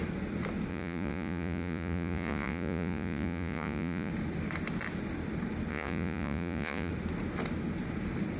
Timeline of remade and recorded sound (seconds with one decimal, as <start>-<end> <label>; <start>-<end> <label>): 0.0-0.7 recorded; 0.7-4.1 remade; 4.1-5.7 recorded; 5.7-6.9 remade; 6.9-8.4 recorded